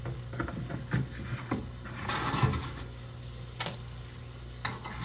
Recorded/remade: recorded